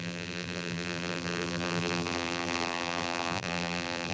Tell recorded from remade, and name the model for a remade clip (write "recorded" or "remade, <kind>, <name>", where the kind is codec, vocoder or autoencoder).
remade, vocoder, BigVGAN v2